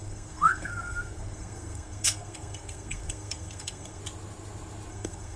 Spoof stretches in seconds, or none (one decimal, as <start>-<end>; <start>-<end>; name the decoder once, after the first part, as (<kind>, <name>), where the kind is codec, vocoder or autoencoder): 0.0-4.0 (codec, SNAC); 4.9-5.4